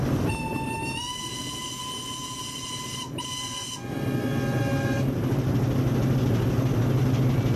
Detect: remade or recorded recorded